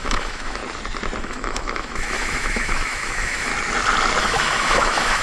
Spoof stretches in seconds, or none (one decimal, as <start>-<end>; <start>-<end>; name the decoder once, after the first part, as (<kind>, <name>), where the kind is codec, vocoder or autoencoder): 0.0-0.6 (autoencoder, DAC-VAE); 1.2-3.5; 4.2-5.2